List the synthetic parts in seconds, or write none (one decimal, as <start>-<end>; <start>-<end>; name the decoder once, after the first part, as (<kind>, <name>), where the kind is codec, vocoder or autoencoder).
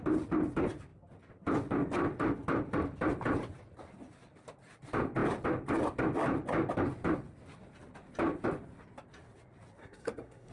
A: 9.8-10.5 (codec, SNAC)